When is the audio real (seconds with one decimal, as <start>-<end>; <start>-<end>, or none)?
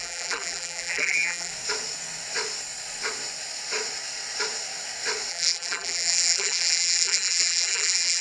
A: 1.5-5.3